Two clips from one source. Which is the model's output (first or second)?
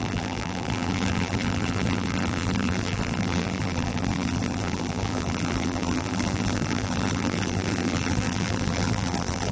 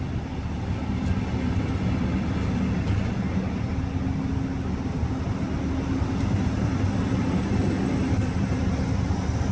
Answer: first